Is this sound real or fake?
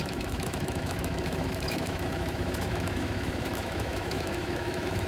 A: fake